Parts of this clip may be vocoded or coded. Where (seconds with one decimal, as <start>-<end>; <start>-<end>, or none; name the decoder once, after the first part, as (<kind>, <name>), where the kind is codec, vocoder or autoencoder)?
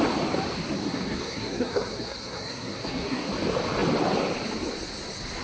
0.8-3.3 (codec, SNAC)